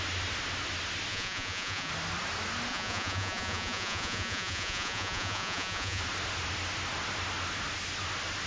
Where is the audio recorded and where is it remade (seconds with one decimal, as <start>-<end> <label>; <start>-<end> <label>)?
0.0-1.1 recorded; 1.1-1.9 remade; 1.9-2.7 recorded; 2.7-6.0 remade; 6.0-8.5 recorded